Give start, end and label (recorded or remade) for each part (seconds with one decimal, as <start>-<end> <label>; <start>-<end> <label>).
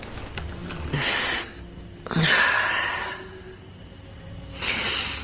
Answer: 0.0-5.2 recorded